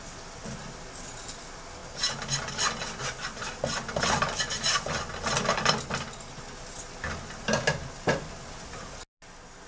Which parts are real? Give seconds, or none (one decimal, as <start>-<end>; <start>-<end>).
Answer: 0.0-9.7